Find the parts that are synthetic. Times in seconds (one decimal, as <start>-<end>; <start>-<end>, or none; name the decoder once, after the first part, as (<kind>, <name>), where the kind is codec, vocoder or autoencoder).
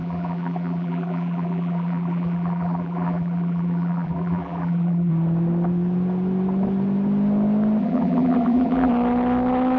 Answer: 0.0-5.1 (vocoder, BigVGAN v2); 7.8-8.9